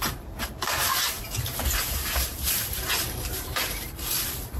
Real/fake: fake